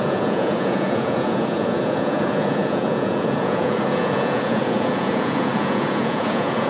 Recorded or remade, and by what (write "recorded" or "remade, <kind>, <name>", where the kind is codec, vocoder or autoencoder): remade, vocoder, Vocos